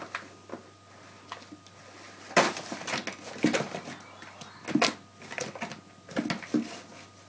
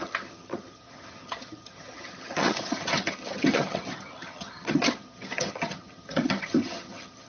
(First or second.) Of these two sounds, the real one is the first